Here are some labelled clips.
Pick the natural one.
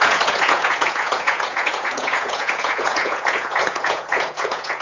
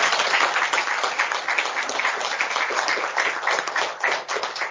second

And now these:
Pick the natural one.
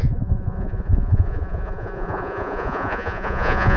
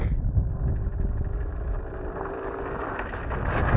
second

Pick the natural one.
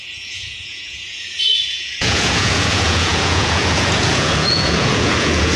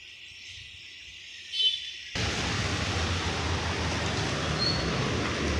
second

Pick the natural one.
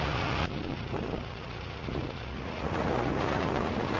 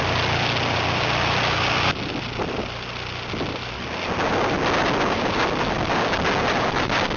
second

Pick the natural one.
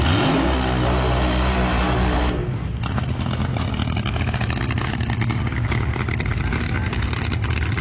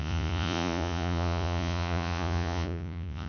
first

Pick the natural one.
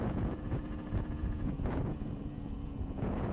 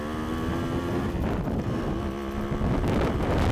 second